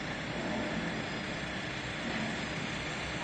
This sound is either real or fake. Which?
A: real